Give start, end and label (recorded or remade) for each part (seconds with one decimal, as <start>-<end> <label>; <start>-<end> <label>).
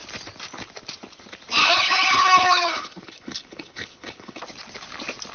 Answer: 0.0-1.6 recorded; 1.6-4.4 remade; 4.4-5.3 recorded